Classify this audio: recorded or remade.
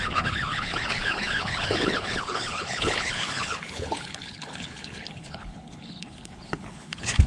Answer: remade